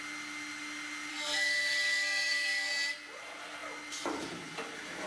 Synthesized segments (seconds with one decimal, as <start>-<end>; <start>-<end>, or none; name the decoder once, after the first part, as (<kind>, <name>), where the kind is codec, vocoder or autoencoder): 1.1-2.7 (codec, SNAC)